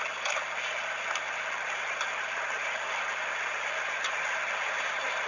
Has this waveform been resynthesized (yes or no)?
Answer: no